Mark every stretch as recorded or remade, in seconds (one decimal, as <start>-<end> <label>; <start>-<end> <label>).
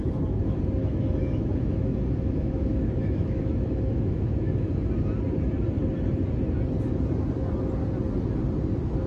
0.0-0.8 recorded; 0.8-4.7 remade; 4.7-9.1 recorded